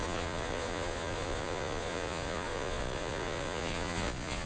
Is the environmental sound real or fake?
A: fake